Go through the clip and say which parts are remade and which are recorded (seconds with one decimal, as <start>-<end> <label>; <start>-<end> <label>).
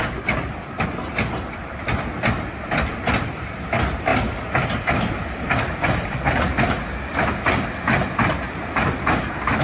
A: 0.0-9.6 recorded